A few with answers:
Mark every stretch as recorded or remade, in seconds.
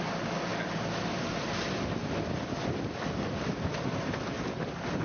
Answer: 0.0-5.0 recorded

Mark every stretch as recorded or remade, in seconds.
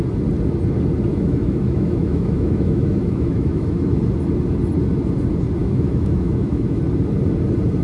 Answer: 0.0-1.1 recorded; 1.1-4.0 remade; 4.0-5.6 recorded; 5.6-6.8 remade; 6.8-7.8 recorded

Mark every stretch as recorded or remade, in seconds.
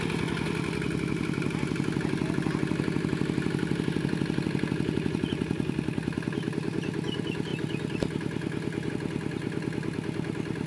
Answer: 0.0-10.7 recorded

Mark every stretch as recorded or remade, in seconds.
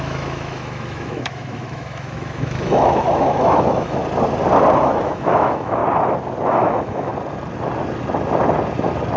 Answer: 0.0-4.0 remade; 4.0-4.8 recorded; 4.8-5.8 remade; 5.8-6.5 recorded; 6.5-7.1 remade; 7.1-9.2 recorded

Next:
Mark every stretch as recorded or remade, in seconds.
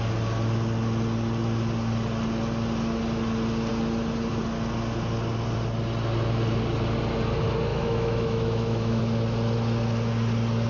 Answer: 0.0-7.7 recorded; 7.7-9.0 remade; 9.0-10.7 recorded